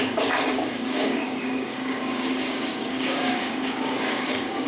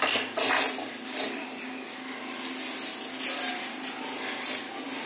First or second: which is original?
second